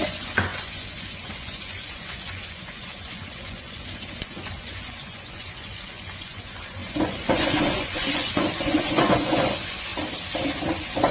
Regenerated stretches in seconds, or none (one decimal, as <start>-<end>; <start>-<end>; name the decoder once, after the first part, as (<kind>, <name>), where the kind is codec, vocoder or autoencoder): 0.0-9.9 (vocoder, Vocos); 10.7-11.1